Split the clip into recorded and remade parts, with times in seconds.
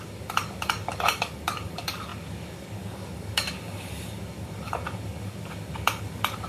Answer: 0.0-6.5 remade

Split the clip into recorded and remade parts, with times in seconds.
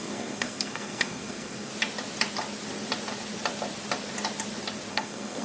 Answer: 0.0-1.7 remade; 1.7-4.9 recorded; 4.9-5.4 remade